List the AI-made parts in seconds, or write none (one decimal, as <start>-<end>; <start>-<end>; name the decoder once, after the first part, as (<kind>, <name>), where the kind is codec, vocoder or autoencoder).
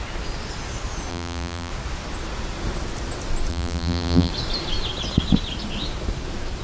1.1-1.7 (vocoder, BigVGAN v2); 3.5-4.3